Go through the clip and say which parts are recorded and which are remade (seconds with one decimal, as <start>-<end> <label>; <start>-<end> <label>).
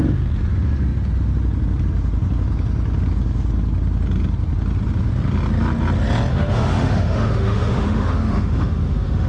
0.0-6.3 recorded; 6.3-9.3 remade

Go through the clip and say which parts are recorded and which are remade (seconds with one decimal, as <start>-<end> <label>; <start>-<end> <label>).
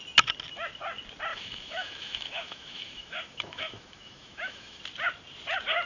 0.0-1.3 recorded; 1.3-4.8 remade; 4.8-5.9 recorded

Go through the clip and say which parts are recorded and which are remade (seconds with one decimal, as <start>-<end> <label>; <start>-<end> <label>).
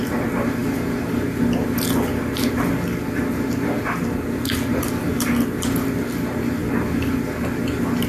0.0-8.1 recorded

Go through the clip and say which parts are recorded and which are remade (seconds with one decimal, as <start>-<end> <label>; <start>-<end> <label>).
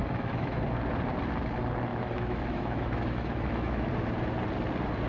0.0-0.6 remade; 0.6-1.9 recorded; 1.9-3.9 remade; 3.9-5.1 recorded